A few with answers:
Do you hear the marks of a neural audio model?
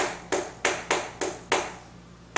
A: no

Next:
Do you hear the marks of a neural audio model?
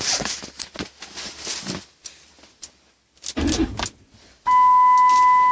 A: no